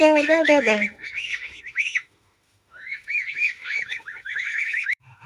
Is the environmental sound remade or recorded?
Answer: remade